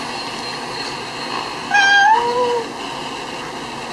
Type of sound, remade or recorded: recorded